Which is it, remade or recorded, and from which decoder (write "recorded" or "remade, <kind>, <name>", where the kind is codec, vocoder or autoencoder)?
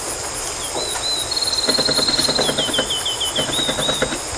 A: recorded